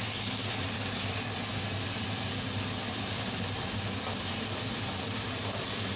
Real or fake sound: real